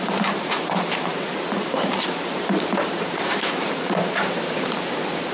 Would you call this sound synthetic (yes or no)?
yes